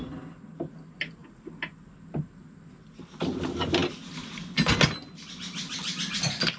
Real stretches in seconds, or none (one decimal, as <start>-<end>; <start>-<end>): 0.0-6.6